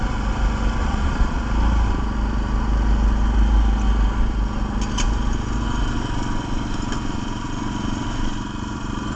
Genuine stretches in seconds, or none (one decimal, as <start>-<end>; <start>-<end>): 0.0-0.8; 1.4-9.1